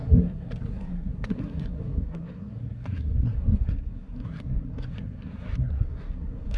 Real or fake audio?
fake